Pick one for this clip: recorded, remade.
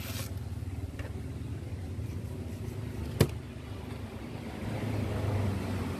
recorded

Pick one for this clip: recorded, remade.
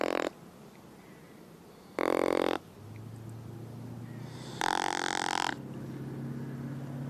recorded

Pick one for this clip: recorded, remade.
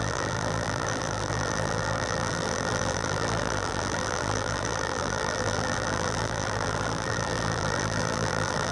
remade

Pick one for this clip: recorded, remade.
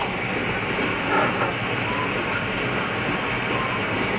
recorded